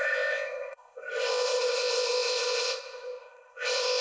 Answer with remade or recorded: remade